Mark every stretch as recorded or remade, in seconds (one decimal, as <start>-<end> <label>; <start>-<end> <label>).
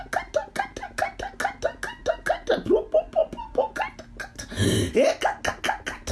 0.0-6.1 recorded